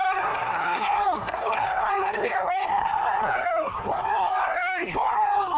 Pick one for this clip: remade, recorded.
remade